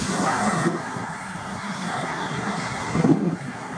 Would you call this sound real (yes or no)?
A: no